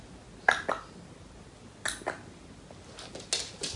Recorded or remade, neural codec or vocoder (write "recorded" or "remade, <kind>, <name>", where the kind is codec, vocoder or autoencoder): recorded